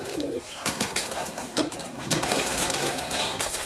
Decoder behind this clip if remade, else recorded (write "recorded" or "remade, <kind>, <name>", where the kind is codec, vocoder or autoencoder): remade, codec, SNAC